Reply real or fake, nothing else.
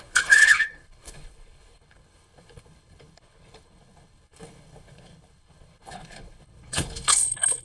fake